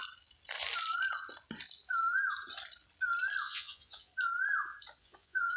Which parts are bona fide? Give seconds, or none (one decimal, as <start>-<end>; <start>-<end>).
0.0-3.4; 4.1-5.0